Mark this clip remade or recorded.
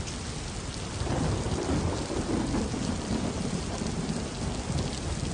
recorded